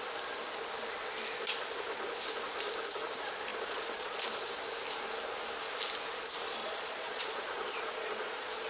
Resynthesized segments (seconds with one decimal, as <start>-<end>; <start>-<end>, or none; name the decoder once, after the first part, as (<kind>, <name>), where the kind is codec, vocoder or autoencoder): 3.5-4.1 (vocoder, Vocos); 6.6-8.7